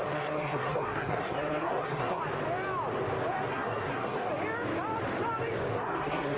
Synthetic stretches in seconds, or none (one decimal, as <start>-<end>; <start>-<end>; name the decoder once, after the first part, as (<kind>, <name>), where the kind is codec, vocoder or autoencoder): 0.0-2.2 (codec, SNAC); 3.5-4.3; 5.7-6.4